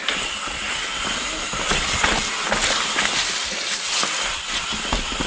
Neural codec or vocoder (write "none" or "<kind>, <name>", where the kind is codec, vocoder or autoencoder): none